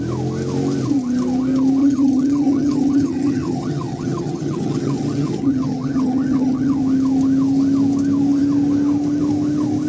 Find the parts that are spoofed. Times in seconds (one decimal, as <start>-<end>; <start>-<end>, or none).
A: 1.8-6.8